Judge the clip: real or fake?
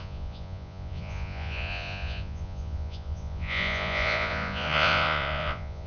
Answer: fake